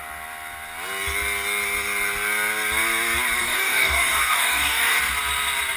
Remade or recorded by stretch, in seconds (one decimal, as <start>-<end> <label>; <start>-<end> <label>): 0.0-3.4 recorded; 3.4-5.0 remade; 5.0-5.8 recorded